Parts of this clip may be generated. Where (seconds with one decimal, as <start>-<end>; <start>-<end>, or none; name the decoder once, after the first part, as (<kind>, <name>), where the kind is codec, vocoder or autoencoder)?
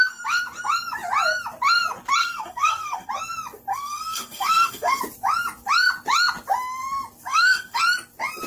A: 2.2-3.1 (codec, SNAC); 3.7-5.0; 7.3-7.8